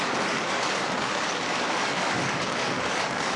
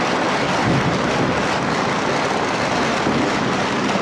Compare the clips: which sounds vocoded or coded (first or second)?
first